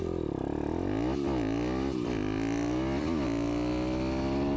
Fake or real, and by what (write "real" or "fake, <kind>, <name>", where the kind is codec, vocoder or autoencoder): real